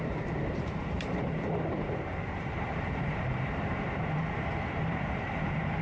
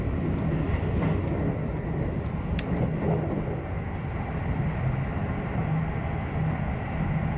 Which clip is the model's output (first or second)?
first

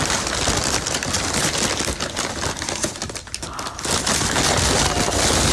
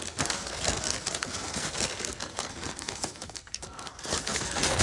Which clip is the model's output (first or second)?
second